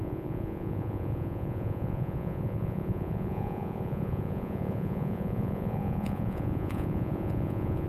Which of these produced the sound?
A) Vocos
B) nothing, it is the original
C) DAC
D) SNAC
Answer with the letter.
A